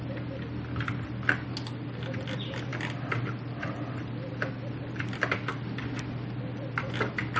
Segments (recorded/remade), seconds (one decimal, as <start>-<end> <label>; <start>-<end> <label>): 0.0-7.4 recorded